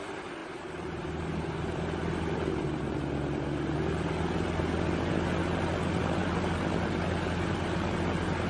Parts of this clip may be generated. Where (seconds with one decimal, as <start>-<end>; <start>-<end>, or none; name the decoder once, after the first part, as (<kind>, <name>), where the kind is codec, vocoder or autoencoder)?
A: none